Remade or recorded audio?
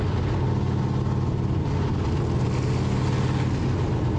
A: recorded